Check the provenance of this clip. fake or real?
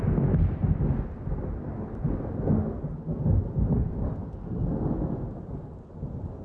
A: real